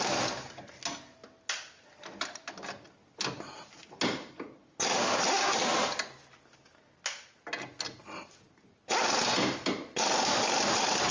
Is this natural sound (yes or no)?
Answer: yes